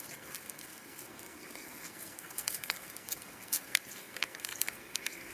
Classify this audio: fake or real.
fake